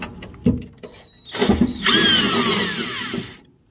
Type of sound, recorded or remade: recorded